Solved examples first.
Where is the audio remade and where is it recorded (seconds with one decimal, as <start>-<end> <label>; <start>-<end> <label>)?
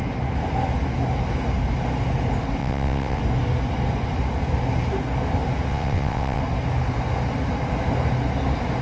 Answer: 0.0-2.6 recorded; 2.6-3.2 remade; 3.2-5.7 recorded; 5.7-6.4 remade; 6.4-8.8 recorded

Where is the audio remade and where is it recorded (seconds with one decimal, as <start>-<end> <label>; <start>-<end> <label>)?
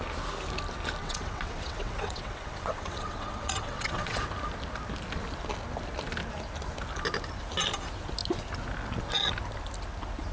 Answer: 0.0-1.0 recorded; 1.0-4.2 remade; 4.2-10.3 recorded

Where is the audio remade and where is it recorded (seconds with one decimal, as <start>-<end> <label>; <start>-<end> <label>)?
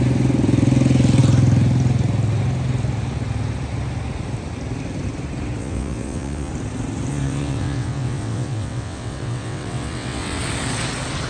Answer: 0.0-5.6 recorded; 5.6-6.5 remade; 6.5-7.1 recorded; 7.1-10.4 remade; 10.4-11.3 recorded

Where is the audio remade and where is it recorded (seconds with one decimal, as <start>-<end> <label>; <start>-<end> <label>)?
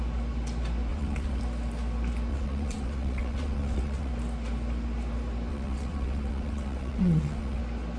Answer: 0.0-0.9 recorded; 0.9-1.4 remade; 1.4-2.3 recorded; 2.3-4.1 remade; 4.1-5.5 recorded; 5.5-7.6 remade; 7.6-8.0 recorded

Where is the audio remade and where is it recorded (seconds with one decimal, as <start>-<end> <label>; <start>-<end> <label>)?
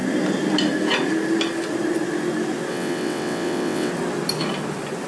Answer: 0.0-2.7 recorded; 2.7-3.9 remade; 3.9-5.1 recorded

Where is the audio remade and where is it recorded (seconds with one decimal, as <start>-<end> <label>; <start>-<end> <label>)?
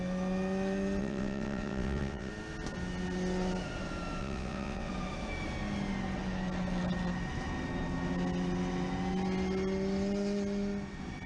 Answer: 0.0-1.0 recorded; 1.0-2.3 remade; 2.3-4.2 recorded; 4.2-4.9 remade; 4.9-11.3 recorded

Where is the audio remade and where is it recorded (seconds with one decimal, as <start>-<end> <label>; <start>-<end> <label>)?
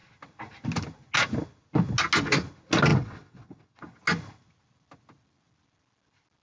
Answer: 0.0-2.9 recorded; 2.9-3.8 remade; 3.8-6.4 recorded